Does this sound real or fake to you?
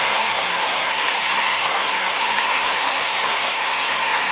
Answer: fake